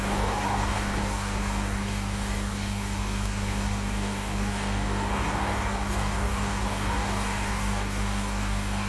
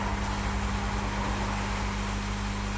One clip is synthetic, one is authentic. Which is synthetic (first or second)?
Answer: first